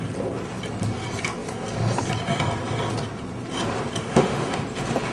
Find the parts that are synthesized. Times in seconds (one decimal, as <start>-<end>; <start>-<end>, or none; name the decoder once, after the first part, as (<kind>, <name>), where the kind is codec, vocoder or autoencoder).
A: 4.0-4.6 (autoencoder, DAC-VAE)